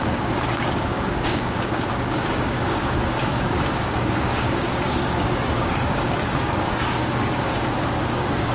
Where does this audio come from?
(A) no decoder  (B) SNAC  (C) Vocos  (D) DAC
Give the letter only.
D